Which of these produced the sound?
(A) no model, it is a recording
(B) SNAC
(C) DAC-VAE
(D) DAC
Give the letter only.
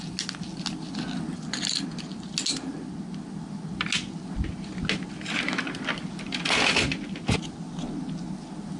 A